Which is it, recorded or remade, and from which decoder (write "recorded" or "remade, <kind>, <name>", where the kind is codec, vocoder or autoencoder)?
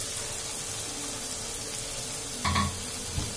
recorded